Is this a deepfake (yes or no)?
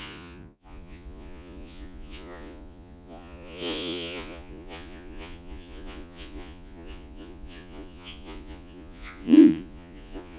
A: yes